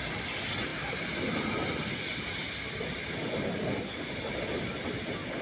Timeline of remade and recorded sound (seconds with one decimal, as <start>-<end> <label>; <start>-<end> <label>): 0.0-5.4 recorded